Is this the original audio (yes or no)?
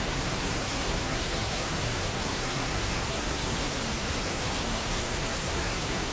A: no